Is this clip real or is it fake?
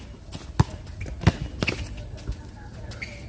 real